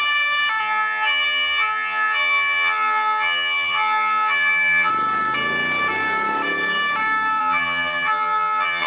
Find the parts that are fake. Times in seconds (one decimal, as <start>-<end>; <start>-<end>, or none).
0.6-4.9; 7.4-8.9